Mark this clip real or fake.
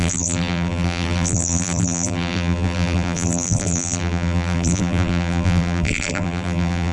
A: fake